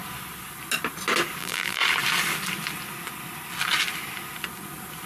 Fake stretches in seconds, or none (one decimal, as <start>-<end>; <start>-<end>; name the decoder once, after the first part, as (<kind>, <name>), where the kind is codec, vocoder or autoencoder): 1.4-1.8 (vocoder, BigVGAN v2)